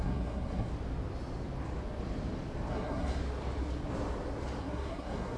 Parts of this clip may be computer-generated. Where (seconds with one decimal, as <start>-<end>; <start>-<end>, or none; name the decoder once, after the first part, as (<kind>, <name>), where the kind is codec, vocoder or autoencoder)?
0.0-0.7 (codec, SNAC); 2.7-3.2; 4.6-5.4